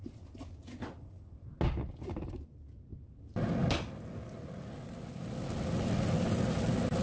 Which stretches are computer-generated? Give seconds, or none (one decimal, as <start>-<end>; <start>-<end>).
none